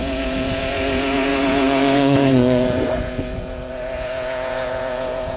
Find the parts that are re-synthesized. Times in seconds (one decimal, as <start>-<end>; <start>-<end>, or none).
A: 0.0-5.4